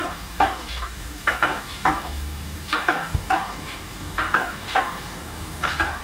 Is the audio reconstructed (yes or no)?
yes